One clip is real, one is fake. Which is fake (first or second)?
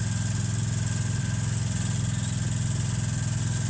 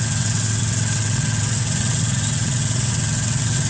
second